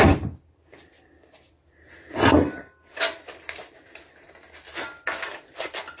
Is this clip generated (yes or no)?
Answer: no